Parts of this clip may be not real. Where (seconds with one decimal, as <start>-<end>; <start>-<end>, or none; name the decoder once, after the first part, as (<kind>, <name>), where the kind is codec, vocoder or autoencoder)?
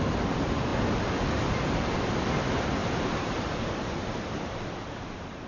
2.8-5.5 (vocoder, BigVGAN v2)